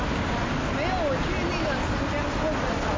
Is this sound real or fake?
real